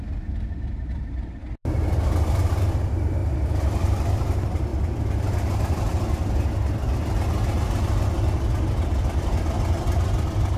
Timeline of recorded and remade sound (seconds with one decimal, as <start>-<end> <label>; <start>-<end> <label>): 0.0-3.2 recorded; 3.2-4.1 remade; 4.1-4.7 recorded; 4.7-5.9 remade; 5.9-10.6 recorded